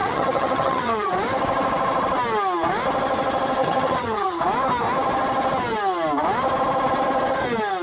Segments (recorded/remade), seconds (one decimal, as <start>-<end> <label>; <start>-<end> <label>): 0.0-1.1 remade; 1.1-3.6 recorded; 3.6-4.4 remade; 4.4-7.8 recorded